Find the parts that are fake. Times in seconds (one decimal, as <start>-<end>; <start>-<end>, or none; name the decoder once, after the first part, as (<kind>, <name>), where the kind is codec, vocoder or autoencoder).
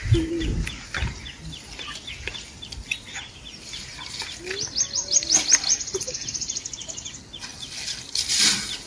none